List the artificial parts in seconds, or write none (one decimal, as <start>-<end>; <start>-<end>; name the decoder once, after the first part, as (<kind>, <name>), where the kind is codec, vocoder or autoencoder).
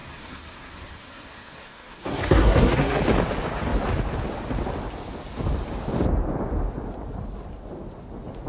0.0-3.0 (codec, SNAC)